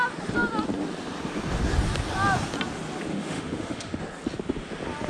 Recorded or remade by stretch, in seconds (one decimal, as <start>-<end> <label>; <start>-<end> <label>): 0.0-3.1 recorded; 3.1-4.0 remade; 4.0-5.1 recorded